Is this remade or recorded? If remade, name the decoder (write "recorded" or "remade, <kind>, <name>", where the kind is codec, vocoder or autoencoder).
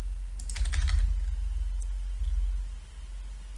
recorded